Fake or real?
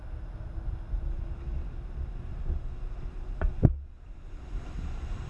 real